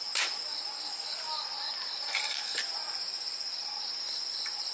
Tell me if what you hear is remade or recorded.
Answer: recorded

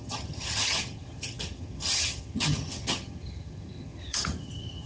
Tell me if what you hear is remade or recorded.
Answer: remade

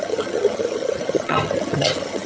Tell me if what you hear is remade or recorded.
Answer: remade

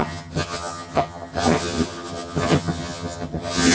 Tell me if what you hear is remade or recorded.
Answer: remade